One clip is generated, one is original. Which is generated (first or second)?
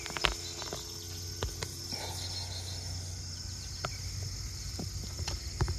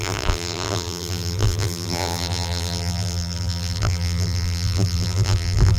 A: second